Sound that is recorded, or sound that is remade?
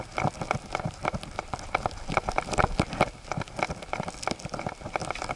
recorded